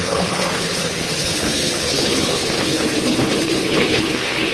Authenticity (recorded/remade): remade